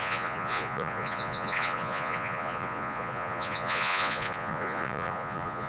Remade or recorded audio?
remade